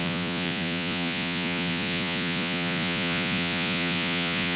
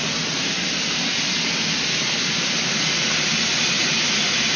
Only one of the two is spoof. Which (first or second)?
first